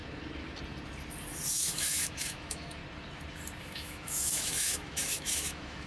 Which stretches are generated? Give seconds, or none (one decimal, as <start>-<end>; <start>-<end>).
1.5-2.8; 3.6-5.9